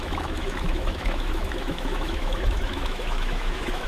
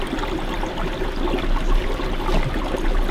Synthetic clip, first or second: first